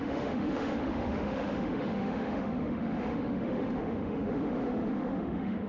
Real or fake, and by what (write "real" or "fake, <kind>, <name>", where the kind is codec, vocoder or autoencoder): fake, autoencoder, DAC-VAE